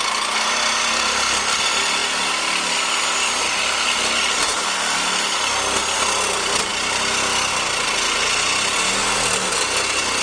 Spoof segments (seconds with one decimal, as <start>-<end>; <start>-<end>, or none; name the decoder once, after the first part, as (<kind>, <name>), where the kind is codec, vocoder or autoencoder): none